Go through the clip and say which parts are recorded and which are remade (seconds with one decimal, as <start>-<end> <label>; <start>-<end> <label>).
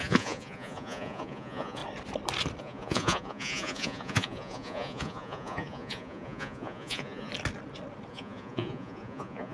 0.0-1.8 remade; 1.8-2.6 recorded; 2.6-7.3 remade; 7.3-8.1 recorded; 8.1-9.5 remade